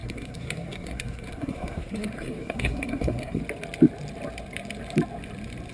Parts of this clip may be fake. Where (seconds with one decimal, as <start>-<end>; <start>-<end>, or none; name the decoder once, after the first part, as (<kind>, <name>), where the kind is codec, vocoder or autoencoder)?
0.0-3.4 (codec, SNAC)